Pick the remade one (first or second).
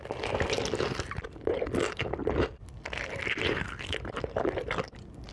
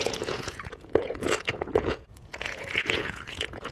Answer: second